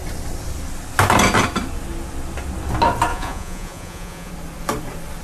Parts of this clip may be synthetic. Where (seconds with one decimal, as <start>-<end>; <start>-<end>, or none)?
3.1-4.3